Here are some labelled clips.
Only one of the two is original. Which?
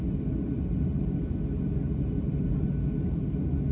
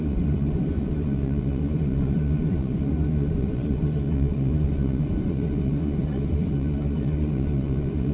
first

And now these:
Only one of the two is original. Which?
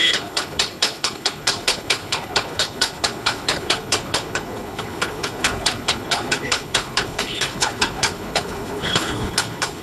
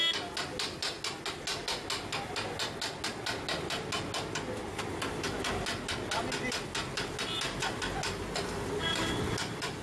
second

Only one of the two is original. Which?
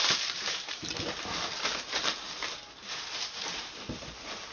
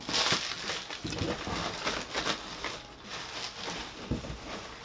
second